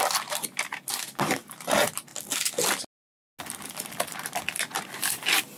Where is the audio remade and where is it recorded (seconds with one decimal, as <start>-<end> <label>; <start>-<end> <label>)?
0.0-5.6 recorded